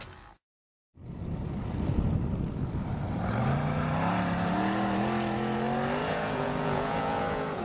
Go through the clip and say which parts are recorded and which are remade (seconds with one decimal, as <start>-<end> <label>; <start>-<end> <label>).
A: 0.0-6.0 recorded; 6.0-7.6 remade